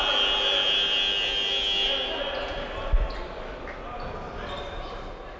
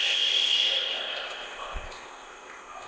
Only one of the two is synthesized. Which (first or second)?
second